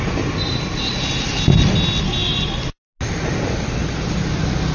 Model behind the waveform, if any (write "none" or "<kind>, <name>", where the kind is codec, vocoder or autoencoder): none